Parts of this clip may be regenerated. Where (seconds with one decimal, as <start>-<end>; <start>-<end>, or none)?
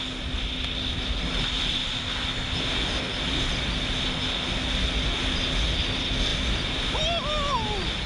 none